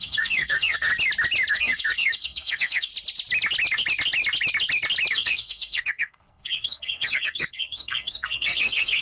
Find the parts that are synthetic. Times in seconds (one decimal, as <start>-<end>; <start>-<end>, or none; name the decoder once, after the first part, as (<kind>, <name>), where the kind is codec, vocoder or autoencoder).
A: 0.0-0.9 (codec, SNAC); 1.5-2.9; 5.1-9.0